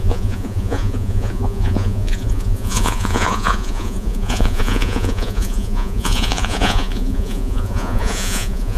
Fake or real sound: fake